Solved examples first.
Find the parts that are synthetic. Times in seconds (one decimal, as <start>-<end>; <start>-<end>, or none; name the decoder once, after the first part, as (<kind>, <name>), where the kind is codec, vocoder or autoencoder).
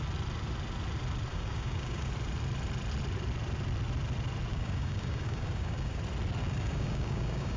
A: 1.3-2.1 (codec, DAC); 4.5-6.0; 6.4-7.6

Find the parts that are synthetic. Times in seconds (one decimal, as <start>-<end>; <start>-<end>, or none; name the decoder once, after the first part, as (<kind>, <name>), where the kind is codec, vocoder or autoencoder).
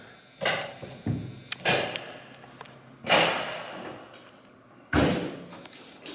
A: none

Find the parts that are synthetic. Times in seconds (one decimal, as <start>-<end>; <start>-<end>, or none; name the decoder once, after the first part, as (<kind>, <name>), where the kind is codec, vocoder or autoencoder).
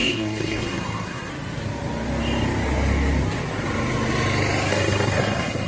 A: 0.0-1.3 (codec, SNAC); 4.7-5.7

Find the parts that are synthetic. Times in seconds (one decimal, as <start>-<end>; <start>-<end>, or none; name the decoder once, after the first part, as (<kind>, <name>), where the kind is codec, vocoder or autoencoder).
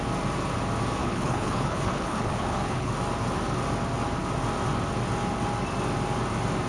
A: 1.0-2.9 (codec, HILCodec)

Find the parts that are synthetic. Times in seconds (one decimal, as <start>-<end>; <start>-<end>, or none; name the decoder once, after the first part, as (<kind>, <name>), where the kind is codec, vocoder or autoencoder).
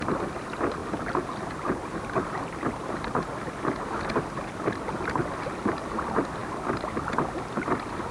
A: none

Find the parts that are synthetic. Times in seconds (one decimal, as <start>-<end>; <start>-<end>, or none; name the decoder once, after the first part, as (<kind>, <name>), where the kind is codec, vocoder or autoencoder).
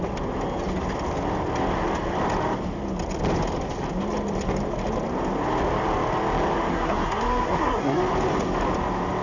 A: 6.7-8.0 (codec, SNAC)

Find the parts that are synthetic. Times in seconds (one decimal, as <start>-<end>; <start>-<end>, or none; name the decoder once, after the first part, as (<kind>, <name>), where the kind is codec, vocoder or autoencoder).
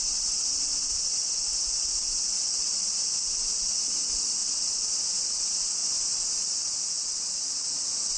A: 0.0-0.7 (vocoder, BigVGAN v2); 1.7-4.4; 4.9-8.2